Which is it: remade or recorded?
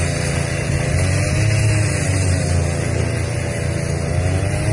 recorded